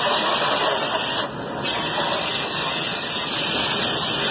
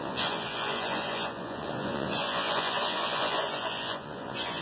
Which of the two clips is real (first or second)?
first